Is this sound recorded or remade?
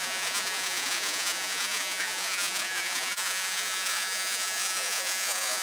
remade